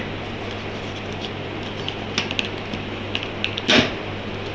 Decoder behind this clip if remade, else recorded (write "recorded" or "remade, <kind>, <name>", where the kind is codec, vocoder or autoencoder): recorded